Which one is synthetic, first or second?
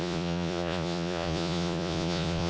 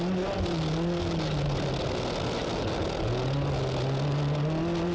first